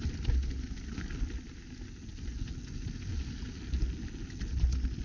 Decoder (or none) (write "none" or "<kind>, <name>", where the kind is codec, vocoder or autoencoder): none